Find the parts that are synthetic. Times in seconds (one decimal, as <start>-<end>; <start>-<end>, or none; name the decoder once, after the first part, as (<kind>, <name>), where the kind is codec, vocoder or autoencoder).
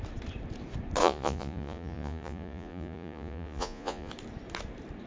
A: 1.0-4.1 (vocoder, Vocos)